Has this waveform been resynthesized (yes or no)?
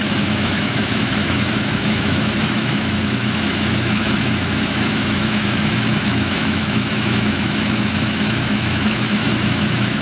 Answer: yes